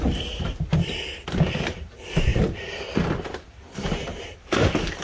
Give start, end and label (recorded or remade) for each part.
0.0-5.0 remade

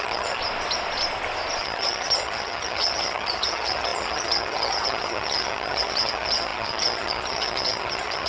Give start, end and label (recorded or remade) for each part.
0.0-0.4 remade; 0.4-1.6 recorded; 1.6-8.3 remade

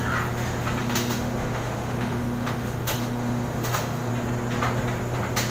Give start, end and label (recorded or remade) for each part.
0.0-0.8 recorded; 0.8-4.1 remade; 4.1-5.5 recorded

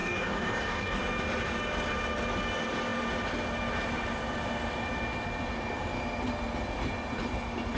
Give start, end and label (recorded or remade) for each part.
0.0-1.0 remade; 1.0-7.8 recorded

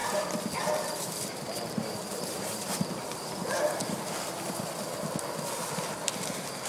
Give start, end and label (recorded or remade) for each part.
0.0-6.7 recorded

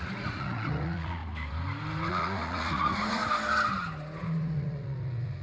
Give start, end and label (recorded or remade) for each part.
0.0-1.2 remade; 1.2-2.1 recorded; 2.1-3.2 remade; 3.2-4.2 recorded; 4.2-5.4 remade

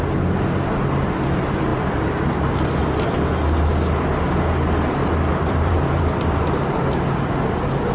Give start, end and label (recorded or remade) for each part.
0.0-1.7 recorded; 1.7-2.3 remade; 2.3-5.3 recorded; 5.3-6.7 remade; 6.7-7.9 recorded

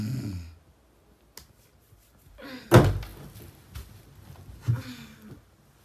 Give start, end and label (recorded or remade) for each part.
0.0-5.8 recorded